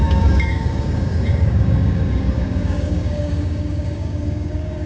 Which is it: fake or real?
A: fake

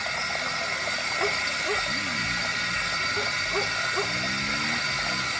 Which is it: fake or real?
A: real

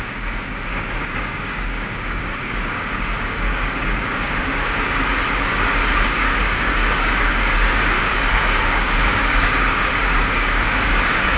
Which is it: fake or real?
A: fake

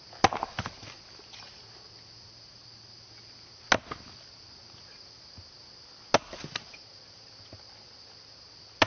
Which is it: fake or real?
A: real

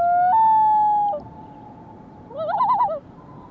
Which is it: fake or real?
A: real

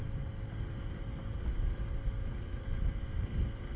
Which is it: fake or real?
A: real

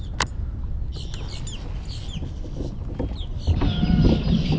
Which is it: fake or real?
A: real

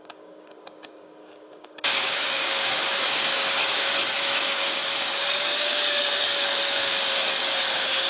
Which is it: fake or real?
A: fake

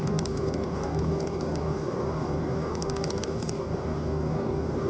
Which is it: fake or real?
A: fake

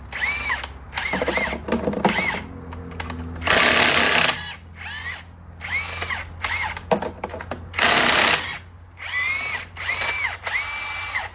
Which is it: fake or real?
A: real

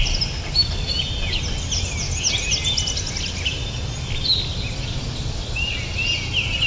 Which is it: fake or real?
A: real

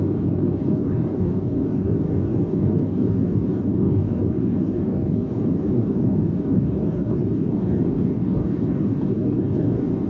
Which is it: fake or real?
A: fake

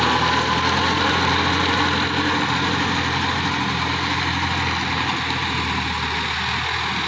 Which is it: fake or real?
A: real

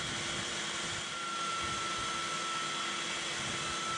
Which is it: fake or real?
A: real